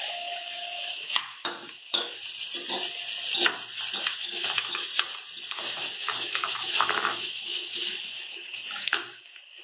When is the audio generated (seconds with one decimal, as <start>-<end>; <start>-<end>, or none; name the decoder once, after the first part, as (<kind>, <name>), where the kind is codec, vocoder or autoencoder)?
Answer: 0.0-2.2 (autoencoder, DAC-VAE); 4.0-4.9; 5.5-9.6